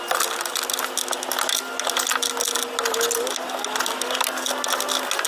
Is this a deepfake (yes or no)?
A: no